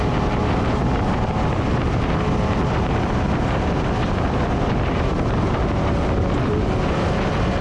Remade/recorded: recorded